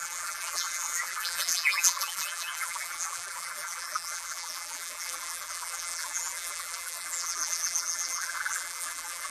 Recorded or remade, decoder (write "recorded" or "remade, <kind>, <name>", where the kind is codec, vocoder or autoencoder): remade, vocoder, BigVGAN v2